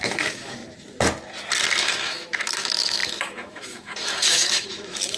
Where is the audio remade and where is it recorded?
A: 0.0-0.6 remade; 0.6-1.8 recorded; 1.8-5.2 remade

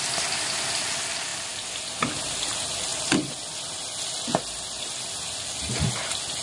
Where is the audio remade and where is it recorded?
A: 0.0-6.4 recorded

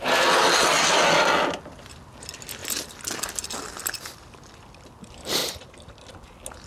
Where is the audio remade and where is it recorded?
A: 0.0-6.7 recorded

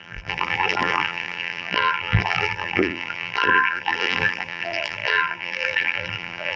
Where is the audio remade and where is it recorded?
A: 0.0-6.6 remade

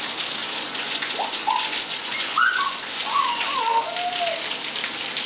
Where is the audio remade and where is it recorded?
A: 0.0-0.4 recorded; 0.4-3.6 remade; 3.6-5.3 recorded

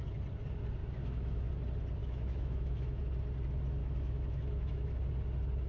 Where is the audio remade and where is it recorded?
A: 0.0-0.8 recorded; 0.8-1.5 remade; 1.5-2.0 recorded; 2.0-3.0 remade; 3.0-3.8 recorded; 3.8-4.9 remade; 4.9-5.7 recorded

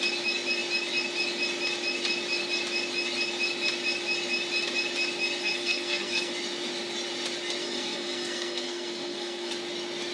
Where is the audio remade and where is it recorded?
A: 0.0-5.4 recorded; 5.4-6.3 remade; 6.3-7.6 recorded; 7.6-9.5 remade; 9.5-10.1 recorded